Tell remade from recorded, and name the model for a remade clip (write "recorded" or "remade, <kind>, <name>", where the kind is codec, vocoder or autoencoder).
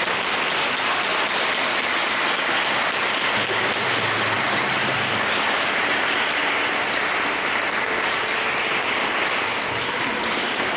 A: recorded